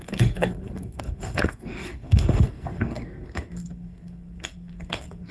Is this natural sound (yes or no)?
no